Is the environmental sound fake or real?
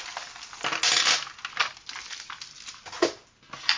real